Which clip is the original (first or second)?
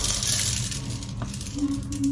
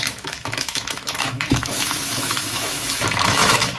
first